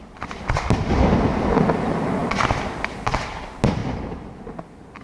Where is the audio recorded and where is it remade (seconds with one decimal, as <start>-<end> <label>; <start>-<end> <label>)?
0.0-5.0 recorded